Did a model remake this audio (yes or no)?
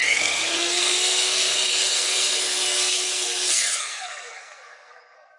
yes